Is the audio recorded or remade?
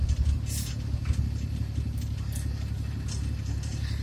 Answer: recorded